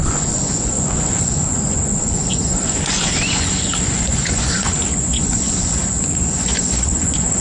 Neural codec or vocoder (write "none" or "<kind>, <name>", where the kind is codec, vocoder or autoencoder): vocoder, Vocos